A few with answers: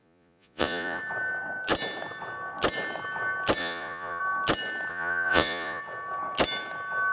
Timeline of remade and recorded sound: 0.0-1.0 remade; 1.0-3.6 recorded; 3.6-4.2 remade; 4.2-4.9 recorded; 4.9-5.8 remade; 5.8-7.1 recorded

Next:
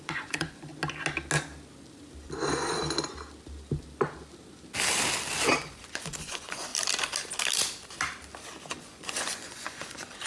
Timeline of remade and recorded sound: 0.0-0.7 remade; 0.7-5.6 recorded; 5.6-6.7 remade; 6.7-8.7 recorded; 8.7-10.3 remade

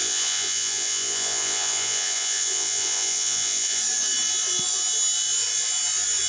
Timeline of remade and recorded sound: 0.0-3.8 remade; 3.8-6.3 recorded

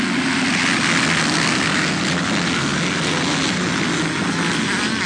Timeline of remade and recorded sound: 0.0-5.1 recorded